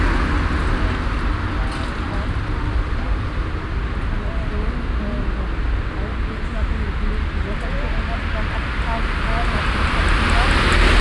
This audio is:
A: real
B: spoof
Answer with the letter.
A